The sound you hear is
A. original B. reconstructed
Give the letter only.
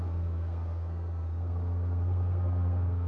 B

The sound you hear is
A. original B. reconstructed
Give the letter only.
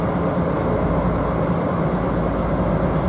A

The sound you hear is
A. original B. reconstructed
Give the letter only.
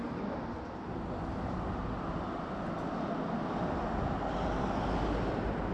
A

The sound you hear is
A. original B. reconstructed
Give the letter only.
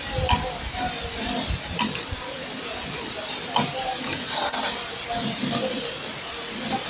A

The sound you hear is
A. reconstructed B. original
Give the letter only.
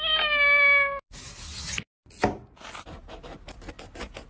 B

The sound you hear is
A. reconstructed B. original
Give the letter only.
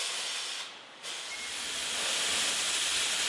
B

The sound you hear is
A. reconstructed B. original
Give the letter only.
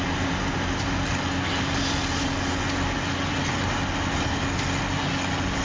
B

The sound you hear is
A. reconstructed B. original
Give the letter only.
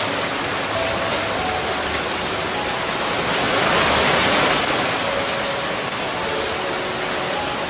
B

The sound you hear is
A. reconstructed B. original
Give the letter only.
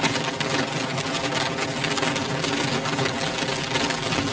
B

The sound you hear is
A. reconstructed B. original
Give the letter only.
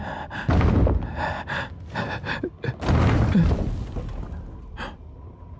B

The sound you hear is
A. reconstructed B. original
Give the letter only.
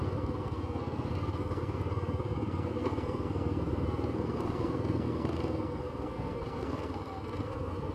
A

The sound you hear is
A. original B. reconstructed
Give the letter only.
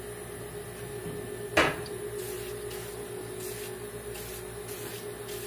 A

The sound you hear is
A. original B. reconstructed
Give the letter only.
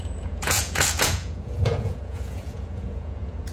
B